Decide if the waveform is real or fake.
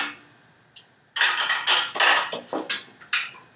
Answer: real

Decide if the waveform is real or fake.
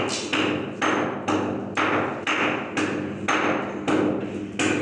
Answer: real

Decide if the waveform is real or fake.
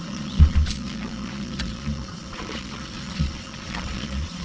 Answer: fake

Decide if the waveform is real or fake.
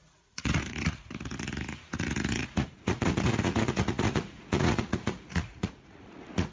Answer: fake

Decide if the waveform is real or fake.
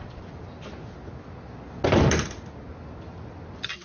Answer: real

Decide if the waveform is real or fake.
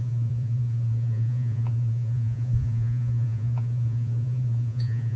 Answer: fake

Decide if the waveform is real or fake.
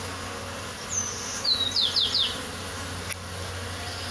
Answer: real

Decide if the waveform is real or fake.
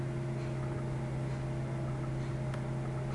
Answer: real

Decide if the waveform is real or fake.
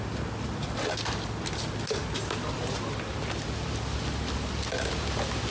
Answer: real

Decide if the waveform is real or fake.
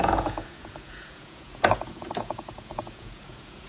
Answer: fake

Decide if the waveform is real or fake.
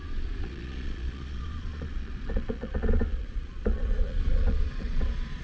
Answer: fake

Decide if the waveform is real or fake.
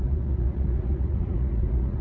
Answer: fake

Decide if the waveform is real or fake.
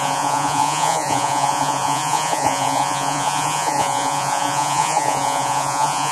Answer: fake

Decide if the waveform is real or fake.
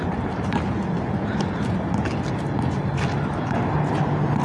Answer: real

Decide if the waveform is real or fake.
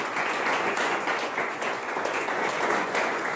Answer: fake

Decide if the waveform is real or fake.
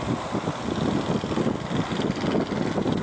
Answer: real